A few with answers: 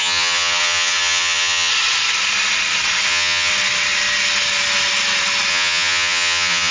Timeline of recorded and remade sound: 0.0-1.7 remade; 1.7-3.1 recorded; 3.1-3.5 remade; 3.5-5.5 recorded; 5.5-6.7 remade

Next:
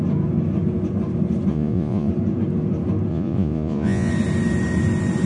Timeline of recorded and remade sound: 0.0-1.5 recorded; 1.5-2.1 remade; 2.1-3.1 recorded; 3.1-4.1 remade; 4.1-5.3 recorded